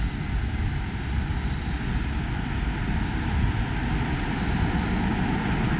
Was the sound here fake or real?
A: real